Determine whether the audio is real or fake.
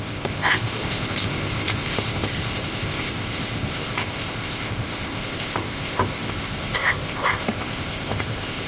fake